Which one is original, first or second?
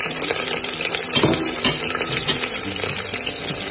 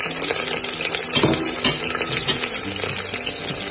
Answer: second